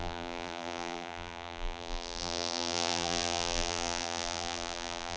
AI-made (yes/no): yes